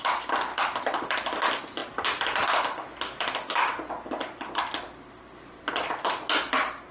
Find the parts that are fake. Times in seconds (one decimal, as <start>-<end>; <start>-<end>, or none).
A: 0.5-1.1